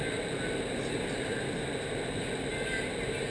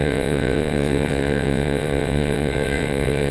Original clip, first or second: first